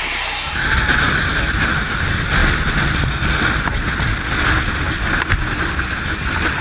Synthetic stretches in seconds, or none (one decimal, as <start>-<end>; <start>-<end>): none